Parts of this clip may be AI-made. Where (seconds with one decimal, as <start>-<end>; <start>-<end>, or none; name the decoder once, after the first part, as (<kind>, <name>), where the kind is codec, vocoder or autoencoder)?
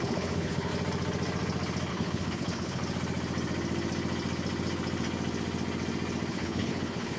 0.0-0.7 (codec, HILCodec); 1.9-2.8; 6.3-7.2